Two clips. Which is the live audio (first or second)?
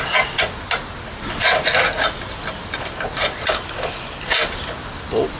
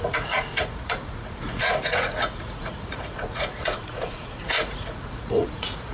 first